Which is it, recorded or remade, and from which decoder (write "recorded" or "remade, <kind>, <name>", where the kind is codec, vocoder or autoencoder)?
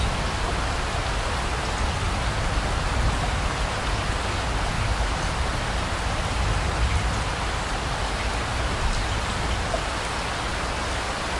recorded